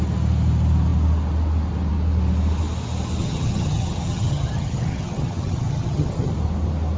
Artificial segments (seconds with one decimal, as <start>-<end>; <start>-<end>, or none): 3.2-6.3